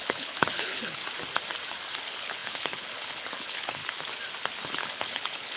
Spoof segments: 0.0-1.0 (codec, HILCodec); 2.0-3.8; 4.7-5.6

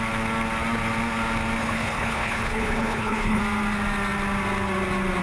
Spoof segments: 1.6-3.4 (codec, HILCodec)

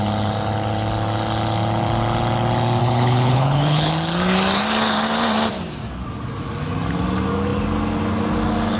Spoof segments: 2.8-3.9 (codec, HILCodec)

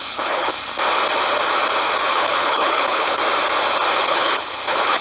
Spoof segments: 0.0-0.5 (codec, HILCodec); 2.0-3.2; 4.0-5.0

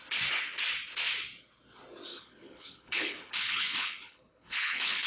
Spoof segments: 2.1-5.1 (codec, HILCodec)

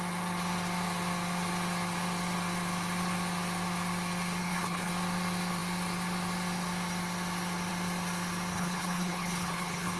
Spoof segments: 4.4-4.9 (codec, HILCodec); 8.5-10.0